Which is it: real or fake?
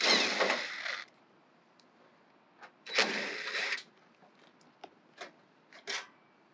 real